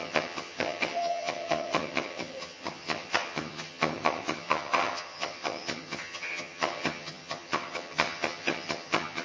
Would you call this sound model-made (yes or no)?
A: yes